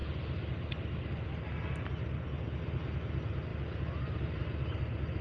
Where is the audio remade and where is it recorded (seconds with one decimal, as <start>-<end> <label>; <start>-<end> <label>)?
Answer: 0.0-5.2 recorded